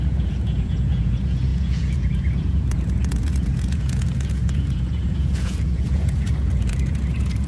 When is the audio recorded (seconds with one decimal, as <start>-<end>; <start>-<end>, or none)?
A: none